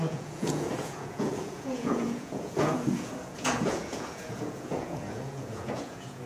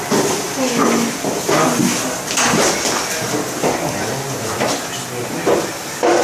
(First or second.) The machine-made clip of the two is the first